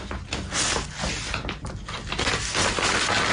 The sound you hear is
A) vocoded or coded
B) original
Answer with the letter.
B